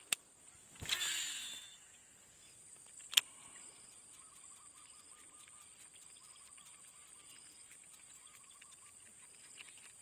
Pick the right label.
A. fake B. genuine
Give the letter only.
B